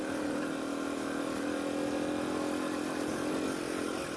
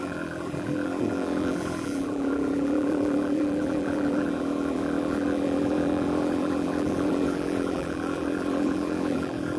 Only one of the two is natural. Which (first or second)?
first